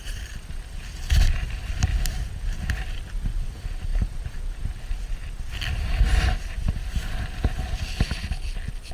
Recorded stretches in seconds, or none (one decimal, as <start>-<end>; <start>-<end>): 0.0-8.9